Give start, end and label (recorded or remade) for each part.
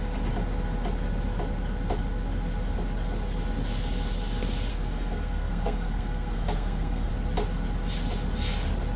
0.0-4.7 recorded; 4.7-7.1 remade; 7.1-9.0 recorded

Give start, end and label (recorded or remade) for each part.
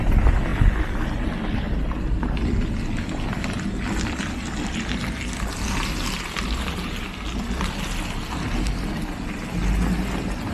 0.0-10.5 recorded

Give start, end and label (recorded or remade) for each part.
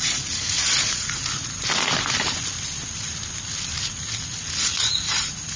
0.0-1.2 remade; 1.2-4.6 recorded; 4.6-5.6 remade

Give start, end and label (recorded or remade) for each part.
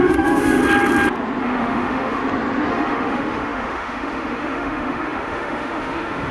0.0-0.6 remade; 0.6-1.4 recorded; 1.4-2.2 remade; 2.2-2.7 recorded; 2.7-6.3 remade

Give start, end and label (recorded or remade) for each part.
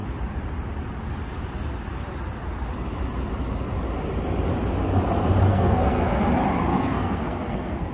0.0-5.5 recorded; 5.5-6.3 remade; 6.3-6.7 recorded; 6.7-7.9 remade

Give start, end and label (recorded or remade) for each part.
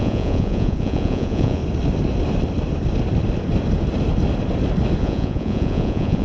0.0-1.6 remade; 1.6-5.0 recorded; 5.0-6.2 remade